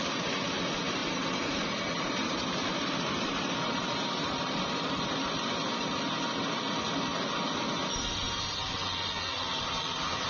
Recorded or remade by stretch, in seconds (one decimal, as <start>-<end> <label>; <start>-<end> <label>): 0.0-1.0 recorded; 1.0-5.3 remade; 5.3-10.3 recorded